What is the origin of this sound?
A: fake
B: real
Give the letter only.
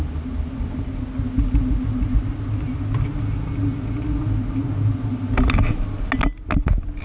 B